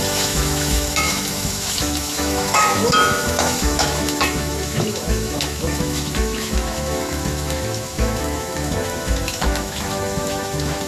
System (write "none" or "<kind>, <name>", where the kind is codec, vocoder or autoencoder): autoencoder, DAC-VAE